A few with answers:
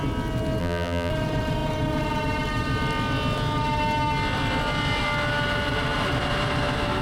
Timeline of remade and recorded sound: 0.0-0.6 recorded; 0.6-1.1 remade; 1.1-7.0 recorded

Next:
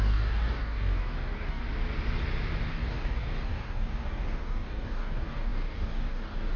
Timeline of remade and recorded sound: 0.0-1.6 remade; 1.6-2.7 recorded; 2.7-6.6 remade

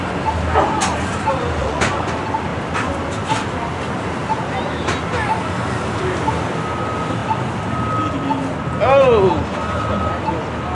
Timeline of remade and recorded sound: 0.0-1.6 recorded; 1.6-2.1 remade; 2.1-10.7 recorded

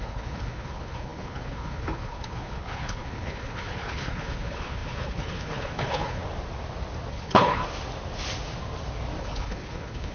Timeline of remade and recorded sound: 0.0-6.2 remade; 6.2-7.1 recorded; 7.1-7.6 remade; 7.6-9.2 recorded; 9.2-10.1 remade